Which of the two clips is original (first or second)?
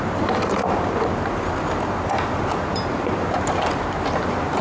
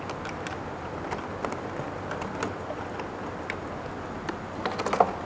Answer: second